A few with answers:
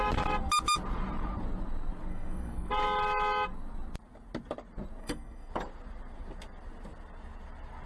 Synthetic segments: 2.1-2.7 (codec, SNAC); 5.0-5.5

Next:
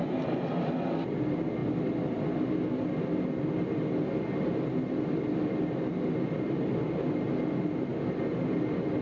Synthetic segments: none

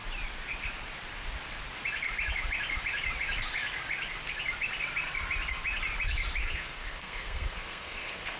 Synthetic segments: 6.4-8.4 (codec, SNAC)

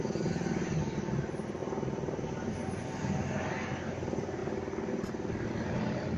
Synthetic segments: none

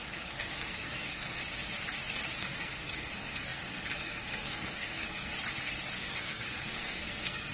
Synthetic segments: 0.0-1.4 (codec, SNAC); 2.4-5.3; 6.0-7.5

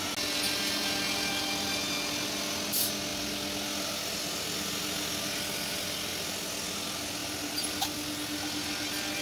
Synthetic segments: none